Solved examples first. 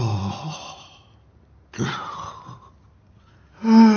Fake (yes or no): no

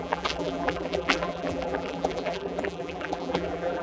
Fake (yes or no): yes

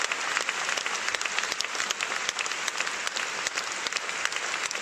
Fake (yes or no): no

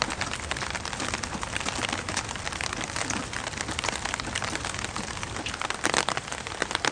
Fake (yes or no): no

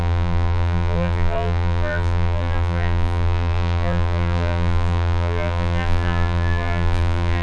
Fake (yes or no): yes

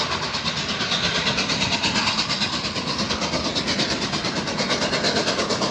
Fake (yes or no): no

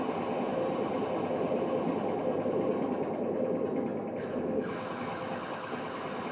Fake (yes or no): no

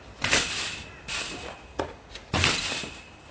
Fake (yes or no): yes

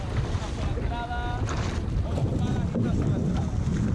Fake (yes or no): no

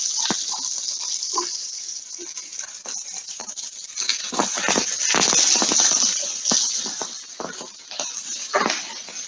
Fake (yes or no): no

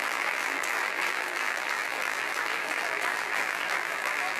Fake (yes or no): yes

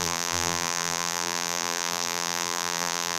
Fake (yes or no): yes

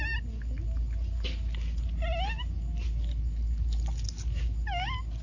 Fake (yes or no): no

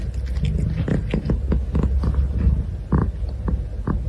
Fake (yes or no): no